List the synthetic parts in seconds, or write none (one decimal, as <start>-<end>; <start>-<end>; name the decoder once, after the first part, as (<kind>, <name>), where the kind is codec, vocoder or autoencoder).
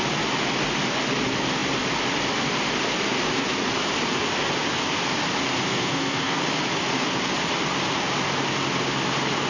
5.7-6.4 (codec, SNAC)